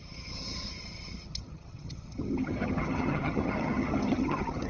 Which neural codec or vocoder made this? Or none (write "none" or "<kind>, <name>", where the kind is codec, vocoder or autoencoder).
vocoder, HiFi-GAN